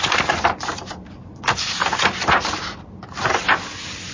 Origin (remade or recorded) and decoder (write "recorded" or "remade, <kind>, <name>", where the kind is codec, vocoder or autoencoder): recorded